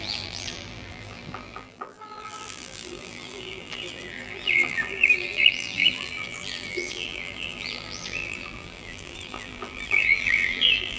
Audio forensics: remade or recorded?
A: remade